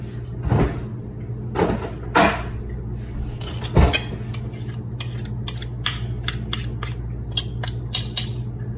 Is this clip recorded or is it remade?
recorded